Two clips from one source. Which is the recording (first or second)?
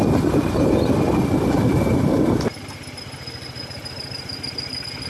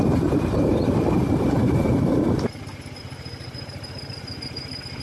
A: first